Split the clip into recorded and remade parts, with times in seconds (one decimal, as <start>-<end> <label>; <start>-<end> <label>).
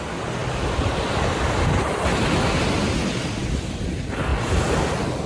0.0-0.4 recorded; 0.4-1.8 remade; 1.8-5.3 recorded